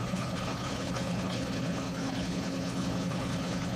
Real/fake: fake